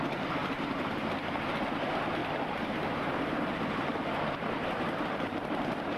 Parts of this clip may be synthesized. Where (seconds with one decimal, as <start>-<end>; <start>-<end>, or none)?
0.4-1.2; 2.2-6.0